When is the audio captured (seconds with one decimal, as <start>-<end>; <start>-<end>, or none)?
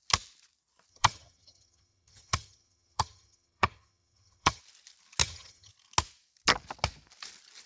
0.0-0.9; 4.6-5.2; 5.7-7.7